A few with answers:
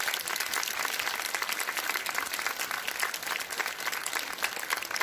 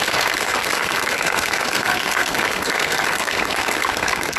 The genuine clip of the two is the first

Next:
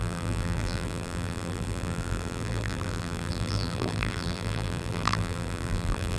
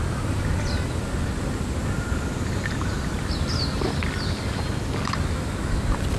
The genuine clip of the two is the second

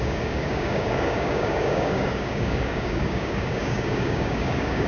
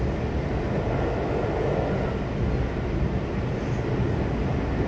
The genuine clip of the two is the second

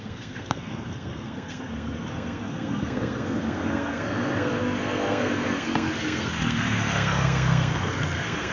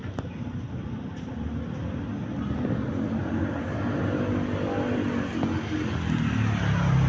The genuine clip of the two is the second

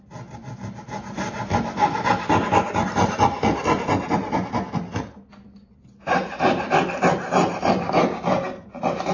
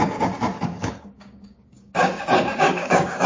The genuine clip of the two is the first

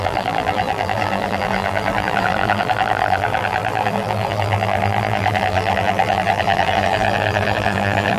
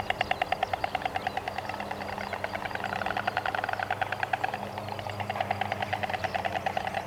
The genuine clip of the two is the second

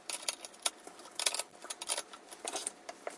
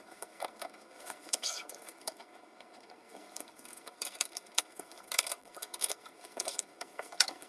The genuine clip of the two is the first